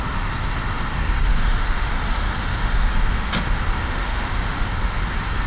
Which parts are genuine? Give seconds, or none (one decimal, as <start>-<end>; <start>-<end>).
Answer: 0.0-1.3; 1.9-2.5; 3.3-3.8; 5.0-5.5